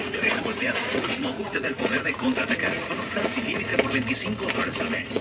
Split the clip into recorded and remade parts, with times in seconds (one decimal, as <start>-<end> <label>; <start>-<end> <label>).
0.0-3.7 remade; 3.7-4.6 recorded; 4.6-5.2 remade